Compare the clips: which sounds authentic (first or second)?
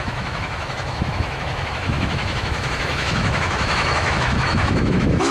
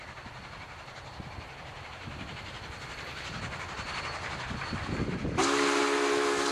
second